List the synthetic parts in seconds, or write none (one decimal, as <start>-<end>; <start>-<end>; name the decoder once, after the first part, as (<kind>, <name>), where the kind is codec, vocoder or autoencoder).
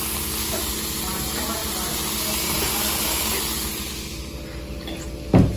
none